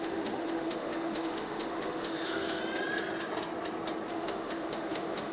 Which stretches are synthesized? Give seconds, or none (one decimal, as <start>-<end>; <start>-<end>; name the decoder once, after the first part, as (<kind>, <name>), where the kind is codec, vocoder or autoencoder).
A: 0.0-2.6 (autoencoder, DAC-VAE); 4.1-5.3